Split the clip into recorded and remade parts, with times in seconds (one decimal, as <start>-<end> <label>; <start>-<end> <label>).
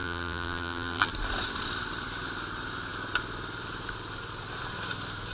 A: 0.0-1.1 remade; 1.1-5.3 recorded